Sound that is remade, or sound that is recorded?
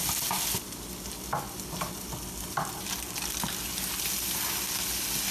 recorded